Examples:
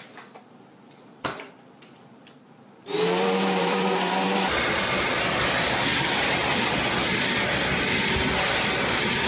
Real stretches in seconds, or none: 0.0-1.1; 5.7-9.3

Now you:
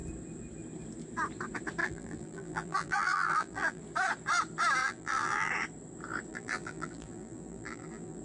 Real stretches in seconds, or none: 0.0-1.8; 3.8-4.8; 5.5-6.3

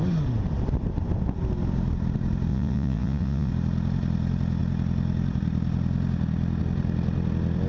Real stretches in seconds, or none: 0.0-2.5; 3.5-7.7

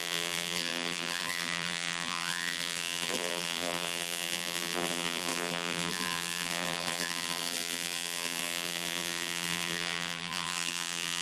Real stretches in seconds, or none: none

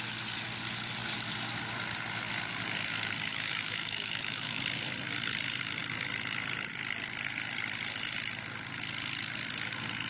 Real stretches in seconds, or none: 0.0-3.3; 4.6-10.1

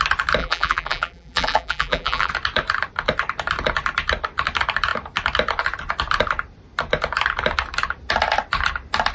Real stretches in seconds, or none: 0.0-0.4; 2.3-9.1